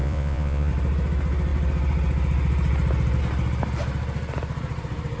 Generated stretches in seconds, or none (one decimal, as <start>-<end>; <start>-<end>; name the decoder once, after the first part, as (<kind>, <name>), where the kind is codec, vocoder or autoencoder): 0.0-0.7 (vocoder, Vocos)